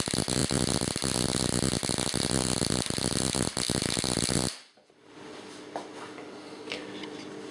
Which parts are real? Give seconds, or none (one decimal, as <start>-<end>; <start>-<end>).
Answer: 0.0-7.5

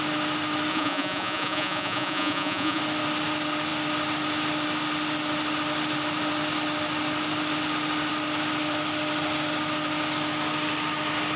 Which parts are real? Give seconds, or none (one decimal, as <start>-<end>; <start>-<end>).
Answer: 0.0-0.7; 2.8-11.4

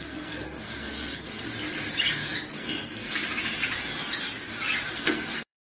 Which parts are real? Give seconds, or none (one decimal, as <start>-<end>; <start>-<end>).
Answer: 1.4-2.5; 3.2-4.9